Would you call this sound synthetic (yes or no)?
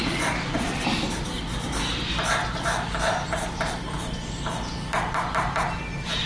no